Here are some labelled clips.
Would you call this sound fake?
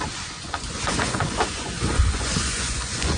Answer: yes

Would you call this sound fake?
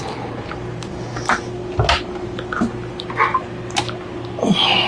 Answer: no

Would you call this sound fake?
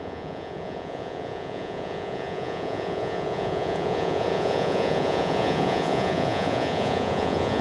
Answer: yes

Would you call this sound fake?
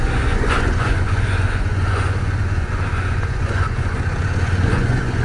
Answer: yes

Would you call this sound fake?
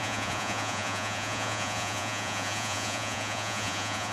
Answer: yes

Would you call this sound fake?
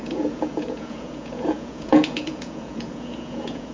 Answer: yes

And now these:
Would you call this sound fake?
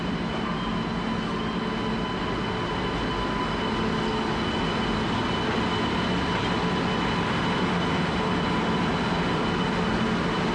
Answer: no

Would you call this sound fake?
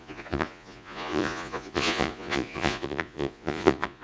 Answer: yes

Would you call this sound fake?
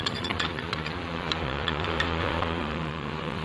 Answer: yes